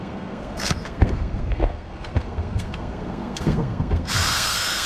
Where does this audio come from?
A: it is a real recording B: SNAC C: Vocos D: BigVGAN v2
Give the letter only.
B